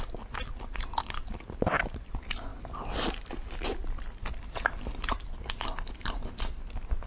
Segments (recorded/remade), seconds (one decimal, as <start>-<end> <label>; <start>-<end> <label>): 0.0-7.1 recorded